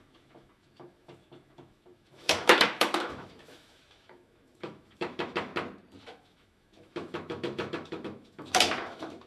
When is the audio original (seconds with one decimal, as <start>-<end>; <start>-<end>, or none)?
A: 5.5-6.0